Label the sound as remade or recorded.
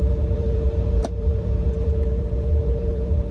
remade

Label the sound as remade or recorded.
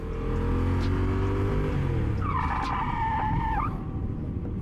recorded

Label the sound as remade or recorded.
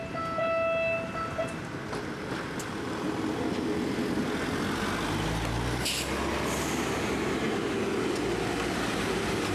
recorded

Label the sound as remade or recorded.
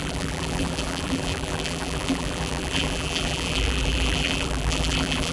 remade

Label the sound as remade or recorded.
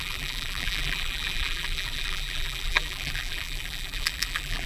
remade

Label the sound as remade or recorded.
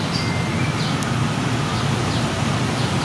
recorded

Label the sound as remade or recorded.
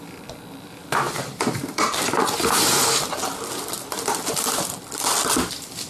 remade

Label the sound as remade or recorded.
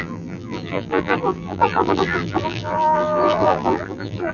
remade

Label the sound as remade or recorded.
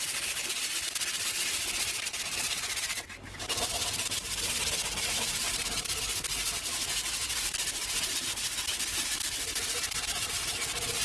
remade